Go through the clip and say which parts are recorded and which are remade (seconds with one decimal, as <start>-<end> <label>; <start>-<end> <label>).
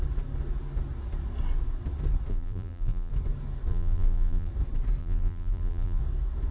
0.0-2.3 recorded; 2.3-3.1 remade; 3.1-3.7 recorded; 3.7-4.5 remade; 4.5-5.0 recorded; 5.0-6.0 remade; 6.0-6.5 recorded